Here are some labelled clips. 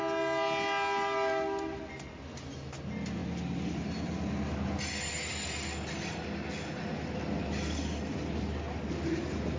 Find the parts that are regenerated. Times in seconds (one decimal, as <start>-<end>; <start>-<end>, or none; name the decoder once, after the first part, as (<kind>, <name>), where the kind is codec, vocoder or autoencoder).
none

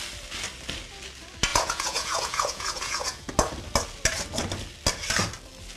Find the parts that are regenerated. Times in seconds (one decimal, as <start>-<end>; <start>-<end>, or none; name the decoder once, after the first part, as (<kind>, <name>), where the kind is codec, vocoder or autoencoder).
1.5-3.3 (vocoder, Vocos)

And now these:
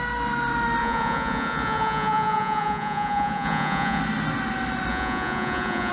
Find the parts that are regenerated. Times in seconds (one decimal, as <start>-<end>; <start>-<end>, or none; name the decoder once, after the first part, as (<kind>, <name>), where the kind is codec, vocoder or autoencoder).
0.8-4.0 (vocoder, Vocos); 4.9-5.9

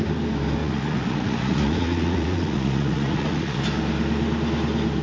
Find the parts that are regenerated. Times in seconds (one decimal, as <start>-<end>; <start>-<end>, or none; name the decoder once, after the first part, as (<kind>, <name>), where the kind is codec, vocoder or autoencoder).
0.6-3.6 (vocoder, Vocos)